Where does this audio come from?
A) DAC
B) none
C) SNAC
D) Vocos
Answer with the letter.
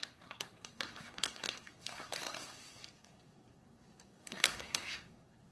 C